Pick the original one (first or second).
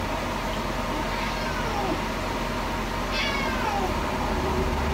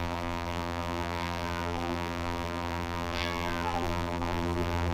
first